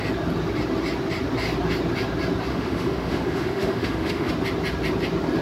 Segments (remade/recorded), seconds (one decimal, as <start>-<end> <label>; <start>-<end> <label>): 0.0-2.5 recorded; 2.5-4.3 remade; 4.3-5.4 recorded